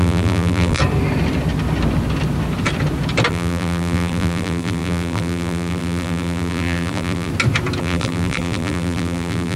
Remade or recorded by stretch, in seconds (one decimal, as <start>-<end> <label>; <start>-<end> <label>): 0.0-0.8 remade; 0.8-3.3 recorded; 3.3-7.3 remade; 7.3-7.8 recorded; 7.8-9.6 remade